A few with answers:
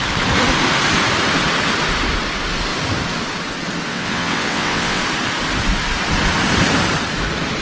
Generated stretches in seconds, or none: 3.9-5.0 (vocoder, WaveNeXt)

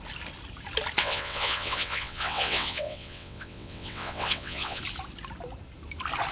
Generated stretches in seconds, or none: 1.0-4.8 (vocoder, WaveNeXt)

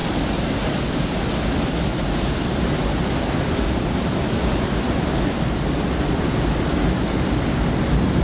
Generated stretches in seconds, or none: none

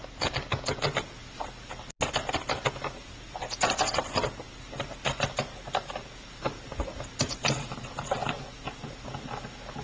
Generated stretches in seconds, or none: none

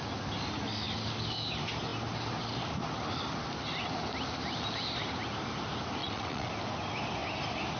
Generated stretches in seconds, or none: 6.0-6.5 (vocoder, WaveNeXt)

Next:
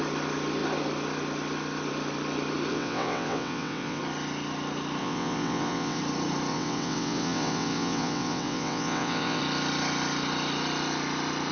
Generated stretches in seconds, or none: 2.7-4.0 (vocoder, WaveNeXt); 5.0-6.0; 6.5-9.4

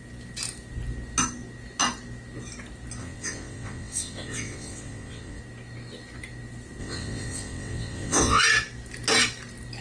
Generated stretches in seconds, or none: 3.0-5.4 (vocoder, WaveNeXt); 6.8-8.4

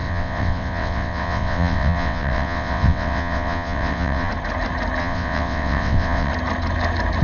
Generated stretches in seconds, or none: 0.0-4.3 (vocoder, WaveNeXt); 5.0-6.3